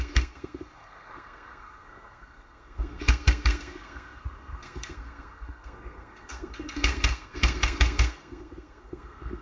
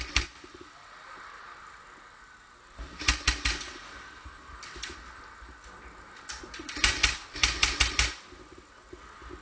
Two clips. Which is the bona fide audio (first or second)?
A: second